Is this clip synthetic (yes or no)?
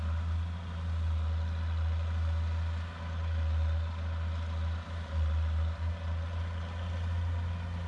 no